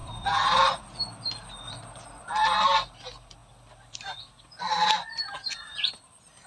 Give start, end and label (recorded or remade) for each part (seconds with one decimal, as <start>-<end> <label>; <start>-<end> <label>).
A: 0.0-1.0 remade; 1.0-3.4 recorded; 3.4-5.9 remade; 5.9-6.5 recorded